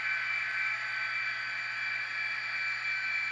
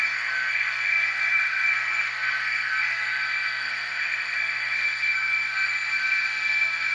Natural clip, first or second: first